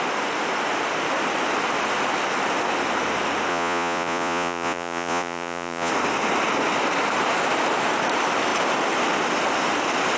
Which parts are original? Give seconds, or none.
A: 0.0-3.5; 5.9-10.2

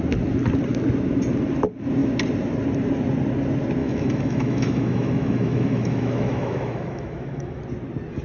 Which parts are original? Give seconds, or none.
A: 0.0-3.8; 7.6-8.2

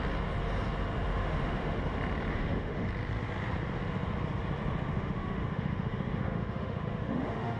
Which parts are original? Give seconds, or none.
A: 0.0-1.2; 1.8-2.3; 2.9-4.9

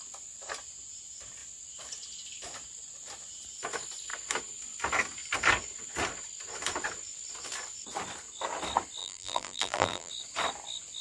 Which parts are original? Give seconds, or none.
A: 0.0-9.0; 10.1-11.0

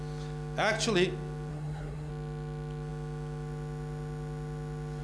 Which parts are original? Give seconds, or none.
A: 0.0-1.5; 2.1-5.0

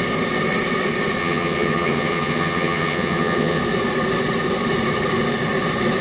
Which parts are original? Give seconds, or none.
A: 0.0-1.2; 3.6-6.0